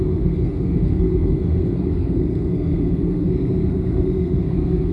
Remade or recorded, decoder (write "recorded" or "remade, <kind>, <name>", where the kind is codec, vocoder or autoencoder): remade, codec, SNAC